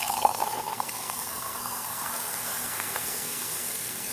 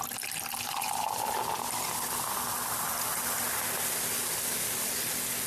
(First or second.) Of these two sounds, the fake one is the first